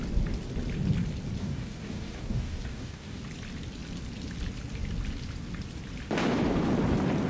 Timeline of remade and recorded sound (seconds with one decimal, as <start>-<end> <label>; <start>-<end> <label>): 0.0-1.4 recorded; 1.4-3.2 remade; 3.2-7.3 recorded